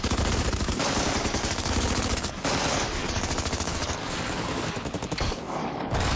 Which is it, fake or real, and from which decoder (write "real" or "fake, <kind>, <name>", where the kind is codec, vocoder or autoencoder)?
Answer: fake, codec, DAC